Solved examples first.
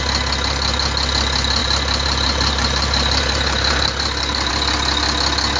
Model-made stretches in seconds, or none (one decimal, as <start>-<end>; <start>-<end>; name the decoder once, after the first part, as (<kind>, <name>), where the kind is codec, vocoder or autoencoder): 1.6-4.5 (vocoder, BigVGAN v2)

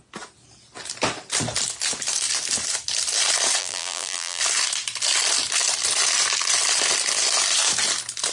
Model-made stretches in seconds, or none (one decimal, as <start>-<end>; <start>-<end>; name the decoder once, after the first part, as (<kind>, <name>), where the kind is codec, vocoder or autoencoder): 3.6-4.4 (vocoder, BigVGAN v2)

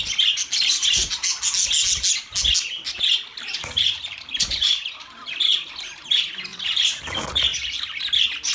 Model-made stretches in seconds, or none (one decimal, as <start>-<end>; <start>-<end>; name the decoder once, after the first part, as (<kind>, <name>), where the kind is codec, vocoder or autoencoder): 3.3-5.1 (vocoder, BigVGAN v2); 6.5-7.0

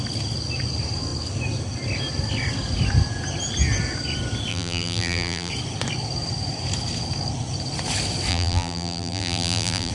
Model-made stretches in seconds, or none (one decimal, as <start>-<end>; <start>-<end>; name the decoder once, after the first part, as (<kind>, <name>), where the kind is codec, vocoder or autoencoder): 4.5-5.5 (vocoder, BigVGAN v2); 8.3-9.9

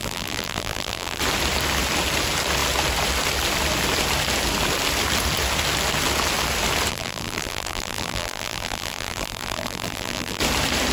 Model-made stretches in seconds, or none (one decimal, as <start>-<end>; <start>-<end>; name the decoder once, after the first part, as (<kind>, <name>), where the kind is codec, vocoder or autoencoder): 0.0-1.2 (vocoder, BigVGAN v2); 6.9-10.4